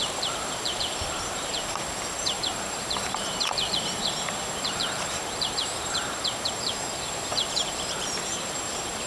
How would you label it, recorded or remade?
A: remade